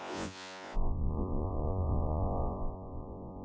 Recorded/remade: remade